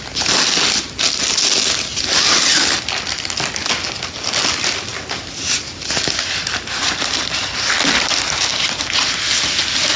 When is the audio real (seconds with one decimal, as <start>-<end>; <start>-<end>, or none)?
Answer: 0.0-10.0